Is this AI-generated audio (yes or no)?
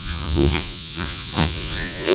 yes